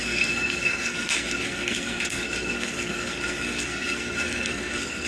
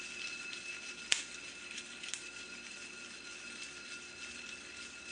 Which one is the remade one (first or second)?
first